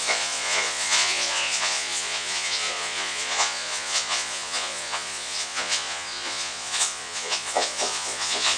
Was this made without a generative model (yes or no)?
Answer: no